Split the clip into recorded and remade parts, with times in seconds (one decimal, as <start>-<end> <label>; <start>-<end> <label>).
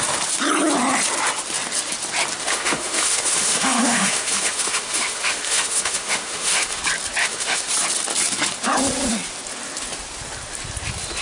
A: 0.0-2.4 recorded; 2.4-6.8 remade; 6.8-7.2 recorded; 7.2-7.7 remade; 7.7-11.2 recorded